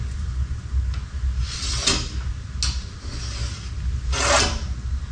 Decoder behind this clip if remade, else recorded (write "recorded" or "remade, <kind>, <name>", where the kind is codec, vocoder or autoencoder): recorded